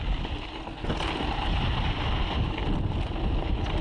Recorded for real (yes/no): yes